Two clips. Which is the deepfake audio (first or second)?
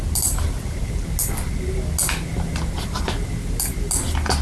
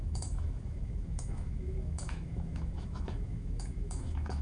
second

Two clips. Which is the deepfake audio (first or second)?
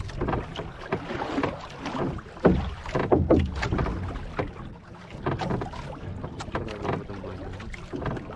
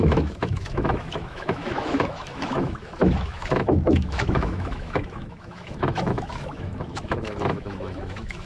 second